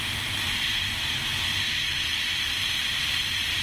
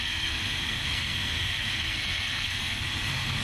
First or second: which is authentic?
first